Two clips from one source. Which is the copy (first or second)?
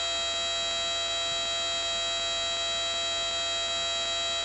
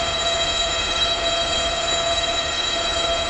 second